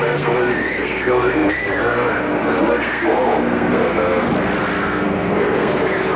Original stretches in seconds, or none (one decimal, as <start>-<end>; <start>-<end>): 4.3-4.8